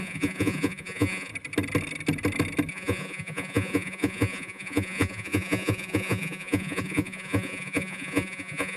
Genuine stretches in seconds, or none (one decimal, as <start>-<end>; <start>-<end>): 1.3-2.7